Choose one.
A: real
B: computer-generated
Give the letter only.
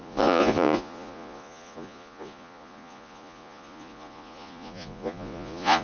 B